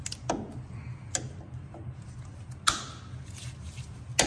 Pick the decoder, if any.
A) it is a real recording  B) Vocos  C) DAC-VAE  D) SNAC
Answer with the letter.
A